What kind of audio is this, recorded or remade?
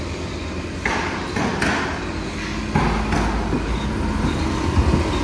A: recorded